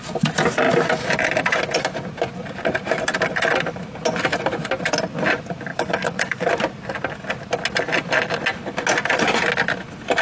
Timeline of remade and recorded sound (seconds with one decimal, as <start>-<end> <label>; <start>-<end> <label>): 0.0-5.7 recorded; 5.7-6.5 remade; 6.5-10.2 recorded

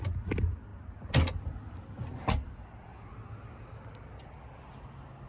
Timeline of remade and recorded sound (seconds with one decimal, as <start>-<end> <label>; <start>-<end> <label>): 0.0-5.3 recorded

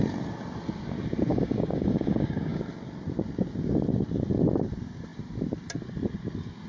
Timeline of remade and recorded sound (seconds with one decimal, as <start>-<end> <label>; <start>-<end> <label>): 0.0-1.3 recorded; 1.3-2.6 remade; 2.6-6.7 recorded

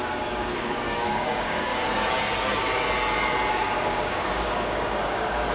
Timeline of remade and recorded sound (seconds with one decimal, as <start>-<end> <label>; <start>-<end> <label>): 0.0-1.7 remade; 1.7-3.5 recorded; 3.5-5.5 remade

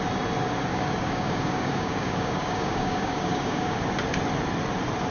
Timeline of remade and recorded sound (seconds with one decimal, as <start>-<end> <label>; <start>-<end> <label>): 0.0-0.7 recorded; 0.7-3.8 remade; 3.8-5.1 recorded

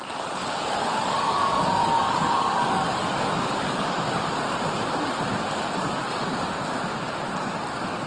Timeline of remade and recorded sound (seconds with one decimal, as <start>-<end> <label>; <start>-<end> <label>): 0.0-0.8 recorded; 0.8-4.4 remade; 4.4-8.1 recorded

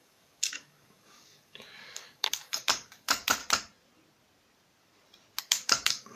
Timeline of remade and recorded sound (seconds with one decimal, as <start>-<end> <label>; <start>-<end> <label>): 0.0-3.4 remade; 3.4-5.4 recorded; 5.4-6.2 remade